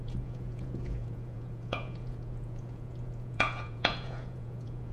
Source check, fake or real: fake